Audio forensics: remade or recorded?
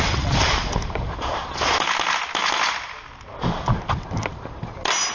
recorded